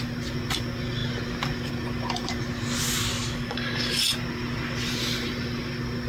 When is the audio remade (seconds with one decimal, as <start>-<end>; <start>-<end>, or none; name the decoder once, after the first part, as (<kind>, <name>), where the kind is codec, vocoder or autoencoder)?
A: 3.1-4.0 (codec, DAC)